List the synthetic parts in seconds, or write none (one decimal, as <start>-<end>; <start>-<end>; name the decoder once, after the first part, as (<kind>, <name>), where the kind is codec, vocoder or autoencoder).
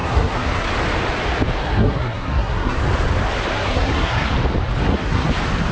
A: 0.0-0.7 (codec, SNAC); 1.6-2.8; 3.5-4.3; 4.8-5.3